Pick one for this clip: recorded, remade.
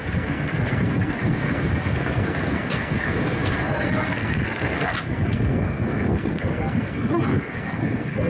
remade